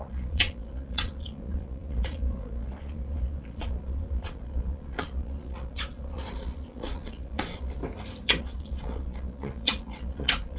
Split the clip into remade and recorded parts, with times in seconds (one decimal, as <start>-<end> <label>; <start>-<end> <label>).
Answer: 0.0-7.8 remade; 7.8-8.4 recorded; 8.4-10.6 remade